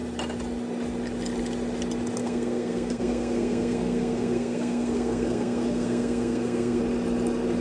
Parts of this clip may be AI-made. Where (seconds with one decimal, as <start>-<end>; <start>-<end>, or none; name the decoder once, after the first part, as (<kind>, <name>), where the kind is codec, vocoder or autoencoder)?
2.2-6.8 (codec, SNAC)